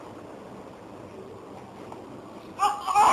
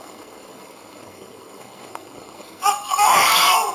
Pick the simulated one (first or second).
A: second